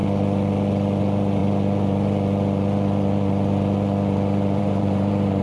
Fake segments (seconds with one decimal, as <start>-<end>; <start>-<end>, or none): 1.0-1.4; 4.6-5.4